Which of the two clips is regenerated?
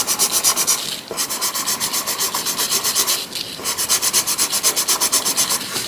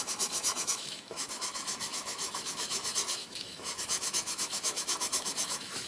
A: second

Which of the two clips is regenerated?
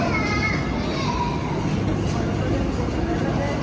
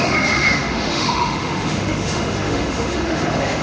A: second